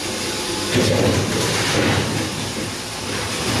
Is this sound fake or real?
real